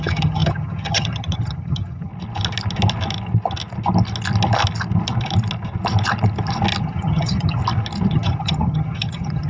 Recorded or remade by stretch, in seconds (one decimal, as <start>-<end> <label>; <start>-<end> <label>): 0.0-2.1 remade; 2.1-6.8 recorded; 6.8-7.6 remade; 7.6-8.1 recorded; 8.1-9.5 remade